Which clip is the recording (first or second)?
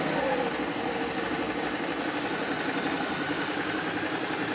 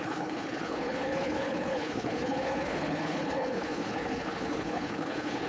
first